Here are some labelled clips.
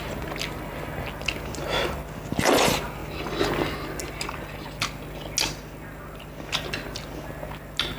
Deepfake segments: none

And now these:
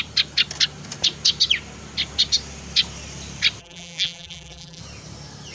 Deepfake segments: 3.6-4.8 (vocoder, BigVGAN v2)

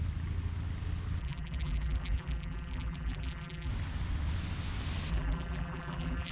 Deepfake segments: 1.2-3.7 (vocoder, BigVGAN v2); 5.1-6.3

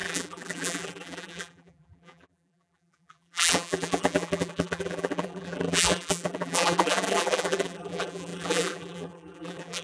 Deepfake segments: 0.0-9.8 (vocoder, BigVGAN v2)

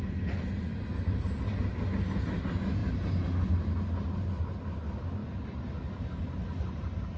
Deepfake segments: none

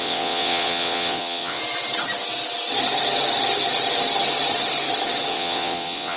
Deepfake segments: 0.0-1.6 (vocoder, WaveNeXt); 5.3-6.2

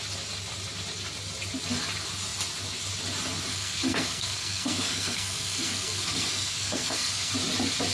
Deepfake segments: 3.5-7.3 (codec, SNAC)